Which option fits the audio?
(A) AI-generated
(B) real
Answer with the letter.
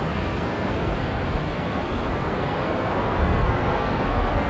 A